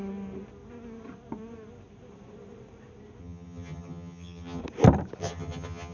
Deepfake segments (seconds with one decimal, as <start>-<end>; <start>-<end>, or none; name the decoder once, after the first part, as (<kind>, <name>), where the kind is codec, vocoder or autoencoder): 3.2-4.6 (vocoder, HiFi-GAN); 5.2-5.9